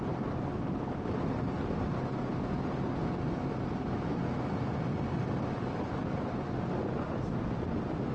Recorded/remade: recorded